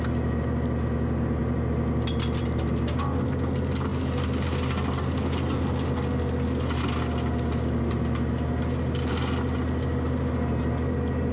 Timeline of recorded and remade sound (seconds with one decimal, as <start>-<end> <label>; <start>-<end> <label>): 0.0-11.3 recorded